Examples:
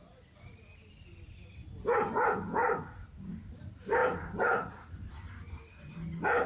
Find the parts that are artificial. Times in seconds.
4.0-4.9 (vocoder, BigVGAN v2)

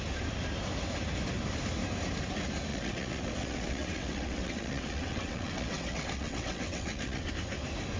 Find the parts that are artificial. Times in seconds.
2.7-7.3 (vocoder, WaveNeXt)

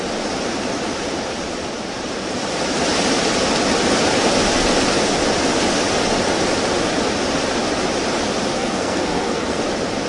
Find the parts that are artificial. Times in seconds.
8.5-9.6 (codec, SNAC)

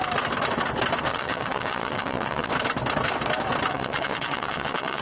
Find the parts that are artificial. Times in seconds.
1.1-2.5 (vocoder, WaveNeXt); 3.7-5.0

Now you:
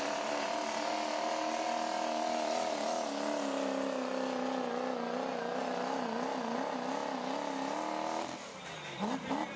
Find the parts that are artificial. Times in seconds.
none